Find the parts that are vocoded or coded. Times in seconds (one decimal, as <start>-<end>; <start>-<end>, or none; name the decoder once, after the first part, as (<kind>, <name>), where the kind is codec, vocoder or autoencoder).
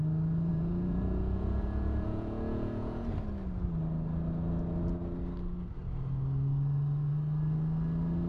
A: 0.5-3.1 (vocoder, Vocos)